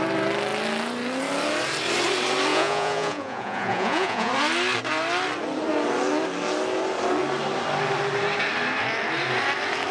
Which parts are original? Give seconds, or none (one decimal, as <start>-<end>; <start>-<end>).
0.0-2.5; 4.3-9.9